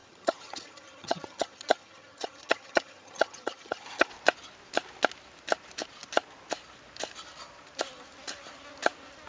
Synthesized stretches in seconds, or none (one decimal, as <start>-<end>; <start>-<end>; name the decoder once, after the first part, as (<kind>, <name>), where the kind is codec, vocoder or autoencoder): 0.0-4.1 (vocoder, HiFi-GAN)